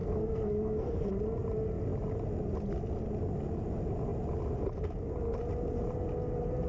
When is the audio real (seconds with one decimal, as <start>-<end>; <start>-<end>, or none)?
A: 1.1-6.7